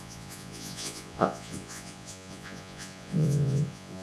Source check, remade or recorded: remade